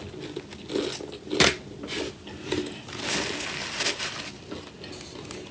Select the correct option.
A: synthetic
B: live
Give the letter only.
B